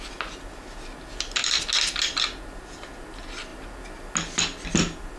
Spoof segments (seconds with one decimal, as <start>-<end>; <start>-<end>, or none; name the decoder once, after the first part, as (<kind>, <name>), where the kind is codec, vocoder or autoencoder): none